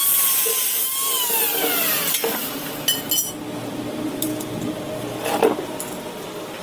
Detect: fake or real real